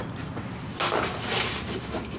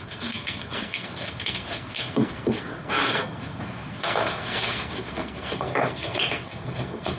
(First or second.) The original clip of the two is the first